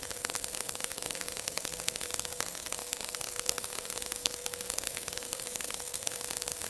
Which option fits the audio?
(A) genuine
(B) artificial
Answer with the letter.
B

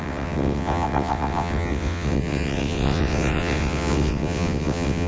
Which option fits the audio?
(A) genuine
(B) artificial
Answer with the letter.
B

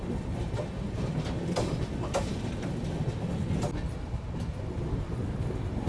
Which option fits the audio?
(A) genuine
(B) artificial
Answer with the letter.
A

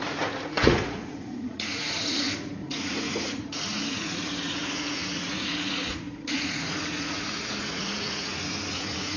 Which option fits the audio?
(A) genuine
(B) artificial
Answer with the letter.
B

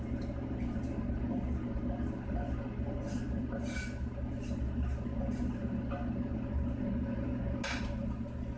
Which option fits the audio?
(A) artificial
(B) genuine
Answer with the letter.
B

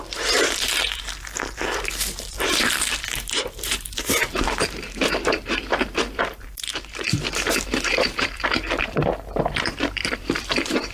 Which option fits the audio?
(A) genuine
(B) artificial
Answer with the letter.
B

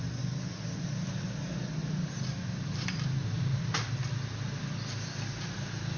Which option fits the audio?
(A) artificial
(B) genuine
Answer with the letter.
B